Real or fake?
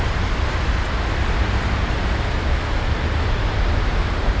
real